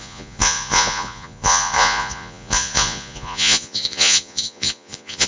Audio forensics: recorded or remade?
remade